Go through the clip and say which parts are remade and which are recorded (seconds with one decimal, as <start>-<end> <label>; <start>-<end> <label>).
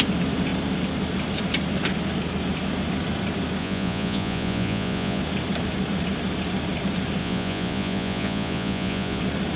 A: 0.0-3.6 recorded; 3.6-5.2 remade; 5.2-7.2 recorded; 7.2-9.2 remade; 9.2-9.6 recorded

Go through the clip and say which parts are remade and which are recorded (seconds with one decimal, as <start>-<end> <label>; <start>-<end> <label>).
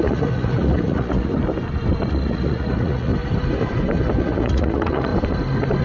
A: 0.0-1.4 remade; 1.4-2.1 recorded; 2.1-3.1 remade; 3.1-4.2 recorded; 4.2-5.1 remade; 5.1-5.8 recorded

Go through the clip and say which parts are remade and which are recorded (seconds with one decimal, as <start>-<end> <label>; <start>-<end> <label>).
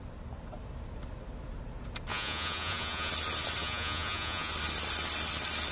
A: 0.0-2.1 recorded; 2.1-3.1 remade; 3.1-3.6 recorded; 3.6-4.5 remade; 4.5-5.7 recorded